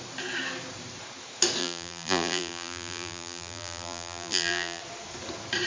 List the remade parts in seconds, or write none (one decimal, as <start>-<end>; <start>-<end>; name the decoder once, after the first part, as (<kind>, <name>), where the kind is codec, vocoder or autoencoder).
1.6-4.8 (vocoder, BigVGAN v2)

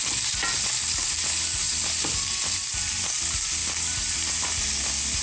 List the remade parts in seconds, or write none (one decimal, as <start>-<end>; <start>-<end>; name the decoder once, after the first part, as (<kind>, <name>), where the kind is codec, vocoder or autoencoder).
3.6-4.7 (vocoder, BigVGAN v2)

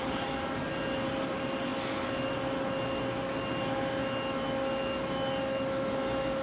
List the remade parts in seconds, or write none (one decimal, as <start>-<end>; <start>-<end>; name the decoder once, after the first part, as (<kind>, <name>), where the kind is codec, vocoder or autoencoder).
0.0-0.6 (vocoder, BigVGAN v2)

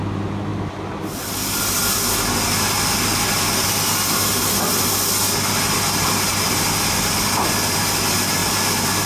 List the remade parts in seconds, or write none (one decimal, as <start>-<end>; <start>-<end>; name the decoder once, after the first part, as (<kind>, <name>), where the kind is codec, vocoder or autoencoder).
none

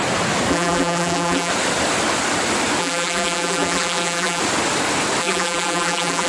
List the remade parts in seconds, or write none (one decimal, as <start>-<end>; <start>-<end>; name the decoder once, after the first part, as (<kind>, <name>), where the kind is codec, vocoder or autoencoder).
0.5-1.5 (vocoder, BigVGAN v2); 2.8-4.4; 5.2-6.3

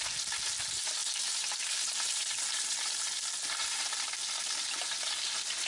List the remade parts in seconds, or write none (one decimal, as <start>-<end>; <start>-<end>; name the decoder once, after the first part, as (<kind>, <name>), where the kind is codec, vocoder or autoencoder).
1.0-3.2 (vocoder, BigVGAN v2); 4.8-5.3

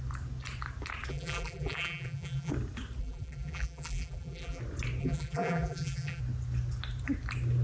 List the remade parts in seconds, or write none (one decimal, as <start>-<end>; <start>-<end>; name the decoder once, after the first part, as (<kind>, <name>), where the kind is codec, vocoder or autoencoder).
1.1-2.5 (vocoder, BigVGAN v2); 3.0-4.6; 5.0-6.2